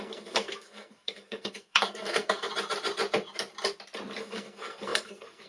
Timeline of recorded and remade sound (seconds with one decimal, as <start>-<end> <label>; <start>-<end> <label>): 0.0-2.5 remade; 2.5-4.2 recorded; 4.2-5.5 remade